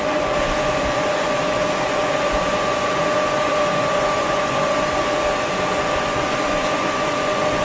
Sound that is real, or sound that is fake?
fake